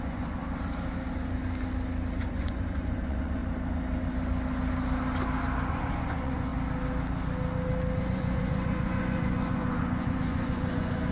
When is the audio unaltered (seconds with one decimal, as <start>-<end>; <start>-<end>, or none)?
0.4-2.3; 3.4-5.7; 6.5-8.0